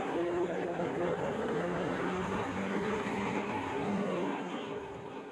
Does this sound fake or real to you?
fake